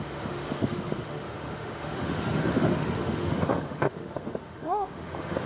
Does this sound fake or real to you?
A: fake